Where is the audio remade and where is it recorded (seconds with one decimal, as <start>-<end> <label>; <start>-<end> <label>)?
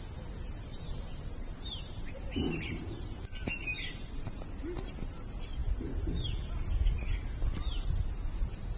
0.0-0.7 recorded; 0.7-3.3 remade; 3.3-3.7 recorded; 3.7-4.5 remade; 4.5-8.8 recorded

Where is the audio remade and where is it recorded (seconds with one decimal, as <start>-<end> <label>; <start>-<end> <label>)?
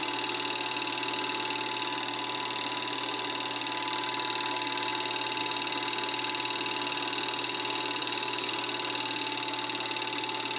0.0-8.0 recorded; 8.0-8.5 remade; 8.5-10.6 recorded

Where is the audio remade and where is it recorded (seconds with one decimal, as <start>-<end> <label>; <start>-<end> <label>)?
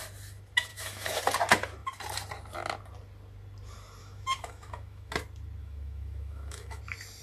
0.0-0.7 recorded; 0.7-1.2 remade; 1.2-4.0 recorded; 4.0-5.1 remade; 5.1-5.6 recorded; 5.6-6.8 remade; 6.8-7.2 recorded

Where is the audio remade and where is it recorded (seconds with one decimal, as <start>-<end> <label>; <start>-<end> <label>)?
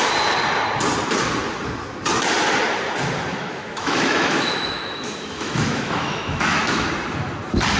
0.0-3.3 recorded; 3.3-6.9 remade; 6.9-7.8 recorded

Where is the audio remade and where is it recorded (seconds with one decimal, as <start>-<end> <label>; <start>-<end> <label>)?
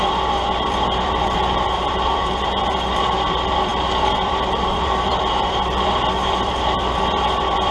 0.0-7.7 remade